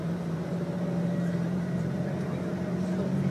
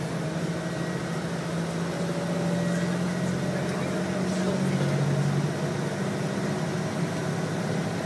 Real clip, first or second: second